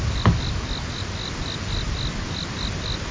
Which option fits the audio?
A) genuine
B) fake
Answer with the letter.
A